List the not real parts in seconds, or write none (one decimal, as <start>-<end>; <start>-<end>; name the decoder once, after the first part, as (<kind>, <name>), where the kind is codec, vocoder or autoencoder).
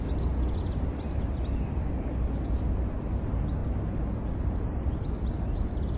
none